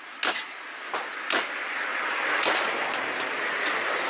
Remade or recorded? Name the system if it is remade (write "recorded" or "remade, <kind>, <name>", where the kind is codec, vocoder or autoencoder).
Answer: recorded